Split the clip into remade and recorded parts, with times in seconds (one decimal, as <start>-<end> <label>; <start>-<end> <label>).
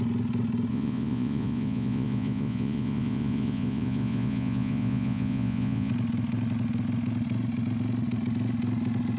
0.0-0.7 recorded; 0.7-5.9 remade; 5.9-9.2 recorded